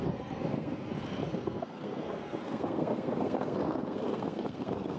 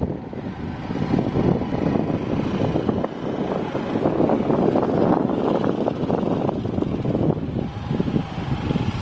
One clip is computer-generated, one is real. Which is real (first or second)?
second